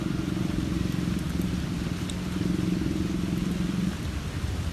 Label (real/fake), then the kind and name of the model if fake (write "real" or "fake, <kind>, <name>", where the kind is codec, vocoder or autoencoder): real